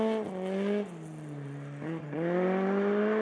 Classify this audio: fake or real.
real